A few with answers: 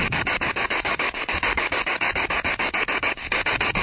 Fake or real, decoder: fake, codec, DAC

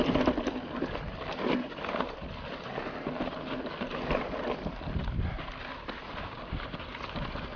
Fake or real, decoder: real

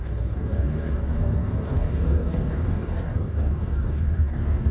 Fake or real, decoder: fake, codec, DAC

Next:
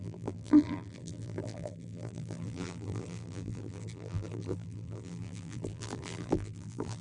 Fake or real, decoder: fake, vocoder, BigVGAN v2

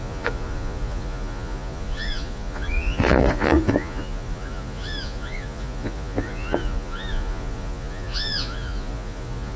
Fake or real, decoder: fake, vocoder, Vocos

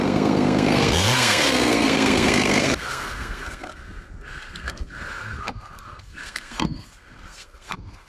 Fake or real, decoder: fake, codec, SNAC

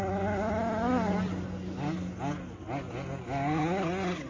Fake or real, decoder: real